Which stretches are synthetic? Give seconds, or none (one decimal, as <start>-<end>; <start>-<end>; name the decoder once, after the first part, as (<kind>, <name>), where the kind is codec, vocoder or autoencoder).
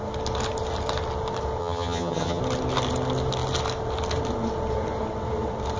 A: 1.6-2.4 (vocoder, HiFi-GAN)